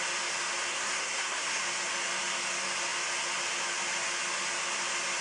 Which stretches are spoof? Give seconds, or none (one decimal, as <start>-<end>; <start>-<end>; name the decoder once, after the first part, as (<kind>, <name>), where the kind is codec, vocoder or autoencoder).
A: 0.7-1.6 (codec, SNAC)

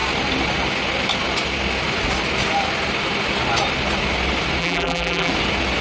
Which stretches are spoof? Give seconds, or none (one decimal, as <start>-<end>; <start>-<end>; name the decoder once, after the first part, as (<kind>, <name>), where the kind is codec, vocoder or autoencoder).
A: 4.6-5.3 (vocoder, BigVGAN v2)

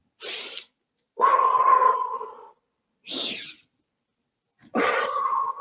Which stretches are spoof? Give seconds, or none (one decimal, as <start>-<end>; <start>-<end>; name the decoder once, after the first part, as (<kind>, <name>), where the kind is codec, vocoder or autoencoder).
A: none

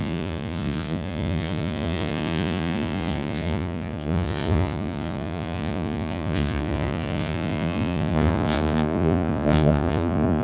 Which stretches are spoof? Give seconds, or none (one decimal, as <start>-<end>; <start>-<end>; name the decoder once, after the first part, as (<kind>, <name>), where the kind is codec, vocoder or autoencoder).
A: 0.0-10.4 (vocoder, Vocos)

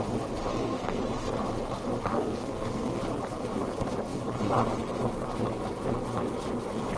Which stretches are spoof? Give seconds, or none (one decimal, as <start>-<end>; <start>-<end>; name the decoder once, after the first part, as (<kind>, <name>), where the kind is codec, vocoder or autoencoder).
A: 0.5-1.0 (codec, SNAC); 2.1-3.0

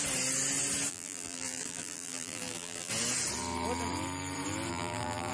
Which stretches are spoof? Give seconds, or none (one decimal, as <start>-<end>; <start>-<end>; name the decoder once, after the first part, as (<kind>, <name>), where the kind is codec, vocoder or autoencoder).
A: 0.9-2.9 (vocoder, BigVGAN v2); 4.7-5.3

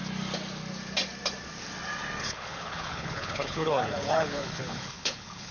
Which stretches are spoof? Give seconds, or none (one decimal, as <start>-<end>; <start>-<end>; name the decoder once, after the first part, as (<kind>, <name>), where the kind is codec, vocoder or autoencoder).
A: 2.2-5.5 (codec, HILCodec)